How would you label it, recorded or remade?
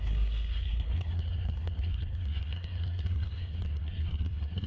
remade